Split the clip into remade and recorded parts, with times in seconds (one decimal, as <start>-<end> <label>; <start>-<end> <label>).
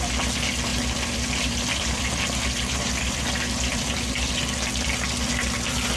0.0-0.7 recorded; 0.7-4.3 remade; 4.3-6.0 recorded